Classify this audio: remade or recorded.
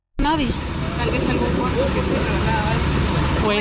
recorded